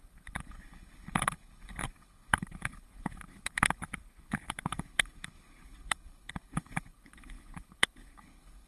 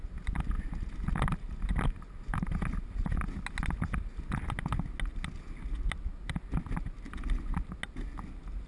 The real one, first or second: second